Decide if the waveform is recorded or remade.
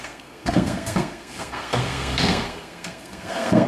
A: remade